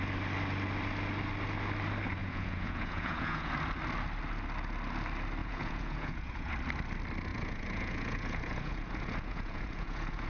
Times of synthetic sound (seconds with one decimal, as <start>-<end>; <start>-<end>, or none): 2.2-3.5; 5.4-6.5; 7.3-10.3

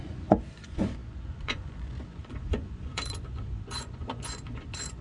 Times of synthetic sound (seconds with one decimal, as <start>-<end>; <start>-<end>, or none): 0.0-5.0

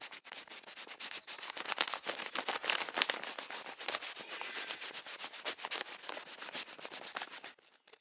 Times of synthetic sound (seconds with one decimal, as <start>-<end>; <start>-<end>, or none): none